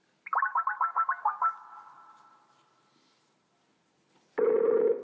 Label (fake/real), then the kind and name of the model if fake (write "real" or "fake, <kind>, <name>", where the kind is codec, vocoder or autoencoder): real